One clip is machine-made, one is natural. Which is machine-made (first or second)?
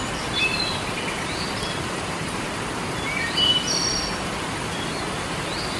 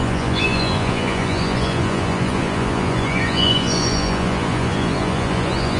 second